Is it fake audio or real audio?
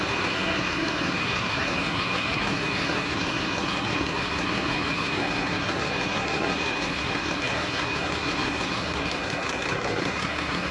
fake